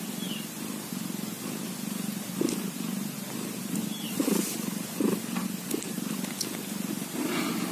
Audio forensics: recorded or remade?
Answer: recorded